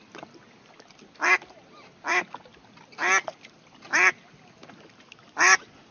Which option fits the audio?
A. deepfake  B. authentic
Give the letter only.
B